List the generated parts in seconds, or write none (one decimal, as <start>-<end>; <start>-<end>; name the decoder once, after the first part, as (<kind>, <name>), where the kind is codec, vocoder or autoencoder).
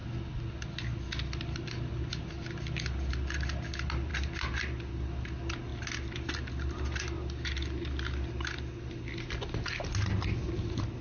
none